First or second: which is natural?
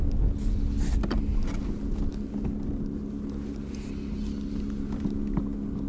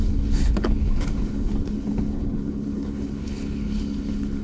first